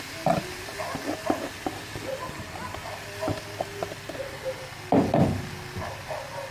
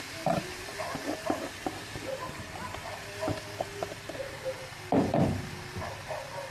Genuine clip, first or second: first